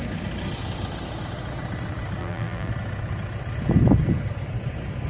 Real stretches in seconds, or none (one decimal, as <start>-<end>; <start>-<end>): 0.0-2.2; 2.7-5.1